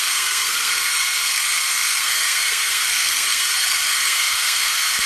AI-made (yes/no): yes